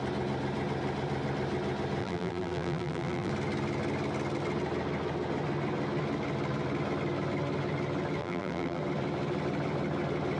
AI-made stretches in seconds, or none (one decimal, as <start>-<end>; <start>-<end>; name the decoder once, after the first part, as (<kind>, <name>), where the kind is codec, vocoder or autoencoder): 2.0-3.3 (vocoder, BigVGAN v2); 8.2-8.8